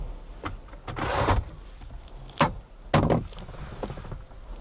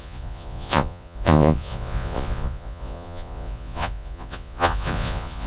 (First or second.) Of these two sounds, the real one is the first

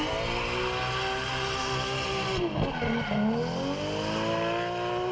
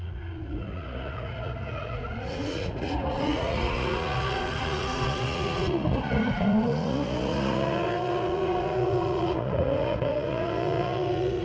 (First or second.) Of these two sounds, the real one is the first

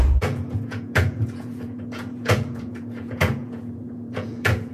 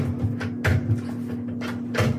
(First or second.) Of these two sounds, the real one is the second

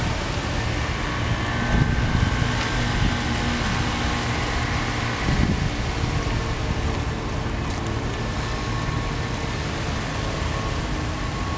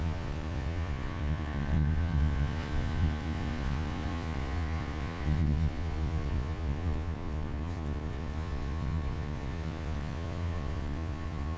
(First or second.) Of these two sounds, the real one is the first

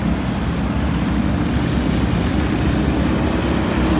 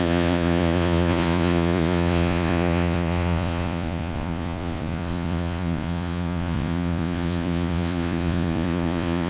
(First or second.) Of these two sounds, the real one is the first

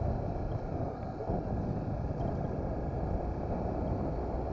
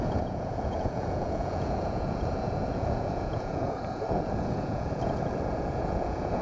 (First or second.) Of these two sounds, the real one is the first